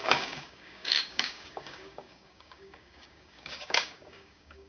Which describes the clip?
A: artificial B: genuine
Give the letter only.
A